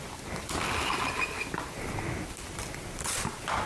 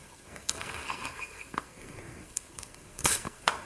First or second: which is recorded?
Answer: first